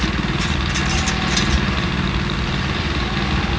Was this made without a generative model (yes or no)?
yes